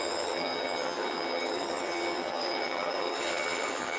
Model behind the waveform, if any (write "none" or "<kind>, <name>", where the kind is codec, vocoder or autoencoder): vocoder, HiFi-GAN